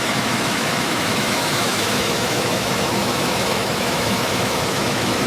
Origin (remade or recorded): remade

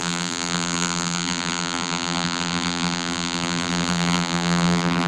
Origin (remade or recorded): remade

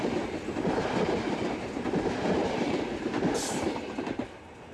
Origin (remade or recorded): recorded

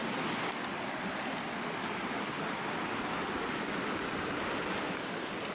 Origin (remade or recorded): recorded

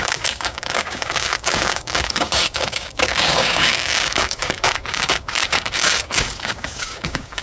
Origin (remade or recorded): remade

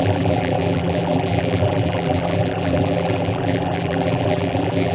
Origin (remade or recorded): remade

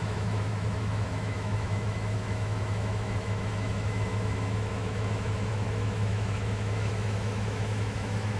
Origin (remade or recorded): remade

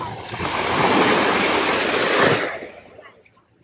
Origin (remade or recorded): recorded